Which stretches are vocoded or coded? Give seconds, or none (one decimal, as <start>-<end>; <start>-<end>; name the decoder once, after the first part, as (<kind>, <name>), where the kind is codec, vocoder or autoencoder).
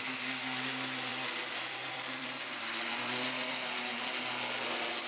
1.1-2.6 (vocoder, BigVGAN v2)